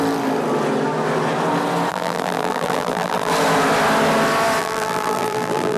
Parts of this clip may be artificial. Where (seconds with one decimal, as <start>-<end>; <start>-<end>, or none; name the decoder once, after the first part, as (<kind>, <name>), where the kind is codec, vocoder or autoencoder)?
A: 1.9-3.3 (vocoder, BigVGAN v2); 4.6-5.8